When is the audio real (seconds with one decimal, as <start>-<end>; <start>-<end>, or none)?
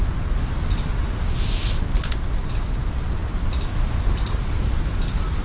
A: 1.0-1.6; 2.5-5.4